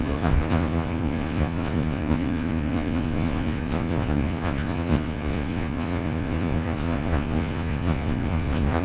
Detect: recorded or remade remade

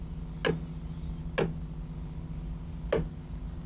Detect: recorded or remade recorded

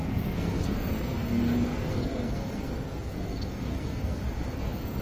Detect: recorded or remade remade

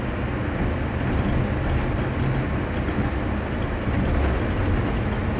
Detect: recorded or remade recorded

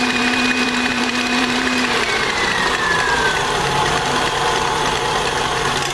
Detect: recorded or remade remade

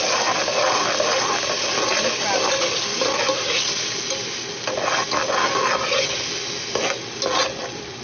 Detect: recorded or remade recorded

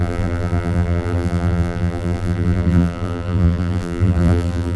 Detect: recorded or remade remade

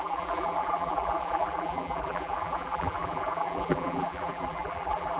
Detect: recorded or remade remade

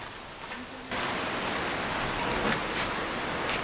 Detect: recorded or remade recorded